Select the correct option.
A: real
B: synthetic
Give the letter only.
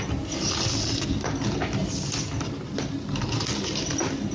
A